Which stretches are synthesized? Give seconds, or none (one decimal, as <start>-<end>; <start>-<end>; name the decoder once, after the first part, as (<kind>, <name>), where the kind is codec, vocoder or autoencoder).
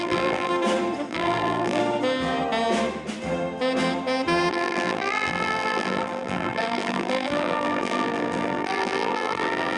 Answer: 0.0-0.5 (vocoder, BigVGAN v2); 1.1-1.8; 4.5-9.8